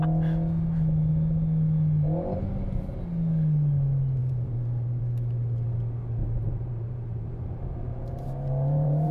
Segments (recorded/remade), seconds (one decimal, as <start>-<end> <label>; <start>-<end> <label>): 0.0-4.2 recorded; 4.2-5.0 remade; 5.0-6.2 recorded; 6.2-9.1 remade